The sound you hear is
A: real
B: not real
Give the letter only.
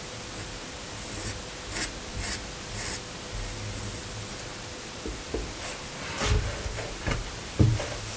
A